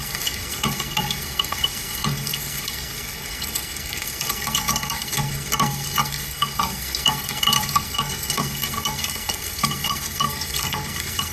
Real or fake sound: fake